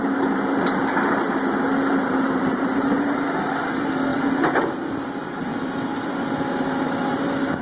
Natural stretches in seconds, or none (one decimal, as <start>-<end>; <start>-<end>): 0.8-1.9; 5.5-7.6

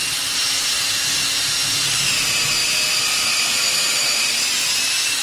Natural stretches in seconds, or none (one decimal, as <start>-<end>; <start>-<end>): 1.0-2.6; 4.2-5.2

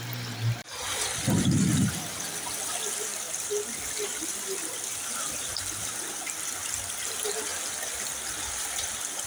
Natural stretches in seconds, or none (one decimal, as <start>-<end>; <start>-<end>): 0.0-3.1; 5.6-6.6; 7.1-9.3

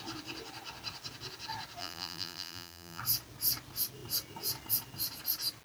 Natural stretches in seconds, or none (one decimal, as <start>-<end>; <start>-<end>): 0.0-1.8; 3.0-5.6